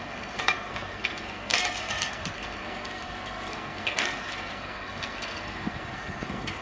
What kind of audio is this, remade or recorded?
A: remade